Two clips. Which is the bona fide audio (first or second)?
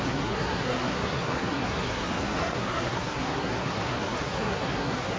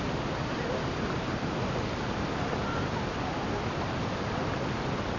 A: second